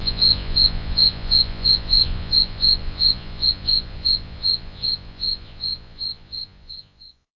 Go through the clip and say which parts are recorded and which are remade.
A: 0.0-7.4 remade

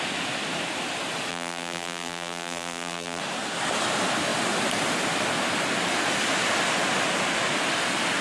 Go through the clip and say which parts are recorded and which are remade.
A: 0.0-1.3 recorded; 1.3-3.2 remade; 3.2-8.2 recorded

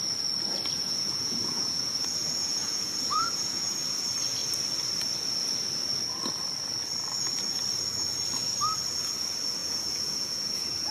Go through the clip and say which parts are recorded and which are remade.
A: 0.0-0.8 recorded; 0.8-3.7 remade; 3.7-9.6 recorded; 9.6-10.9 remade